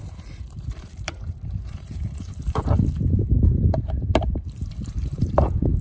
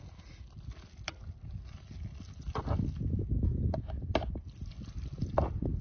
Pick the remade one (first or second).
first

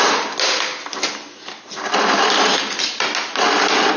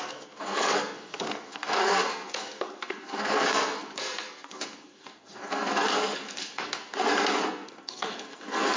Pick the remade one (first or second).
second